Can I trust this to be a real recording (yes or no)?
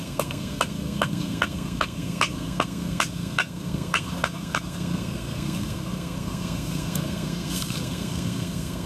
no